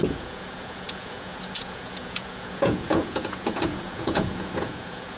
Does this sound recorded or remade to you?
remade